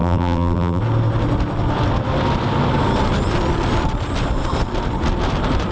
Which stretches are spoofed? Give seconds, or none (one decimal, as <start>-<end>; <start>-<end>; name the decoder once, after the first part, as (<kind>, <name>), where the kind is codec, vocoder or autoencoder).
0.0-0.8 (vocoder, BigVGAN v2)